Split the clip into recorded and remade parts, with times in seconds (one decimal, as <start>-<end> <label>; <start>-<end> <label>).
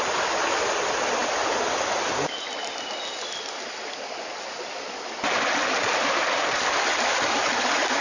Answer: 0.0-8.0 recorded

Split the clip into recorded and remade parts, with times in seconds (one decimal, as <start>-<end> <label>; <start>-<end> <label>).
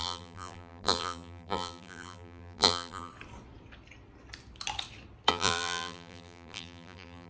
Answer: 0.0-3.1 remade; 3.1-5.3 recorded; 5.3-7.3 remade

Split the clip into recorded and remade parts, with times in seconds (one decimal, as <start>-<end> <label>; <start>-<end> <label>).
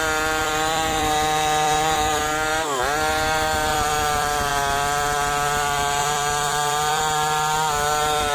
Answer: 0.0-0.4 recorded; 0.4-2.2 remade; 2.2-3.7 recorded; 3.7-4.5 remade; 4.5-6.0 recorded; 6.0-7.0 remade; 7.0-8.3 recorded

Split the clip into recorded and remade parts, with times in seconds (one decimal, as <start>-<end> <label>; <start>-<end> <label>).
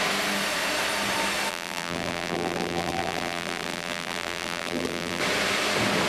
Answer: 0.0-1.5 recorded; 1.5-5.2 remade; 5.2-6.1 recorded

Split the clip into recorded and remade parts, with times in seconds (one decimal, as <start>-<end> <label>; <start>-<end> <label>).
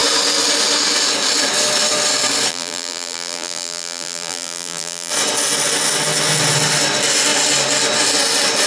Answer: 0.0-2.5 recorded; 2.5-5.1 remade; 5.1-8.7 recorded